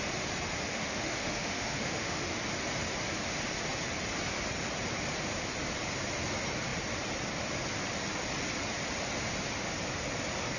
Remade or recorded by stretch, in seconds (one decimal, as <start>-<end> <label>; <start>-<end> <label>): 0.0-0.7 recorded; 0.7-2.4 remade; 2.4-10.6 recorded